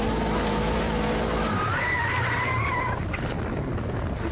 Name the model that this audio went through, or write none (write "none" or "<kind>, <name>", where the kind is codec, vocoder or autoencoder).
none